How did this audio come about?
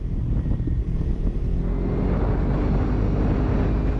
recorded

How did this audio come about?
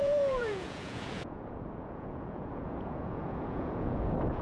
remade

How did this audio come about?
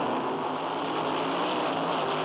recorded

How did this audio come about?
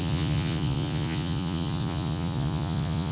remade